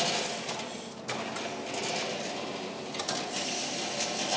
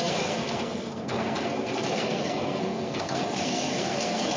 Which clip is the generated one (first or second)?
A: second